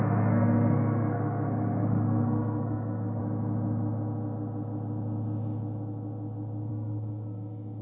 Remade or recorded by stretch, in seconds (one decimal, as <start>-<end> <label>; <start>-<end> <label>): 0.0-3.2 remade; 3.2-6.7 recorded; 6.7-7.8 remade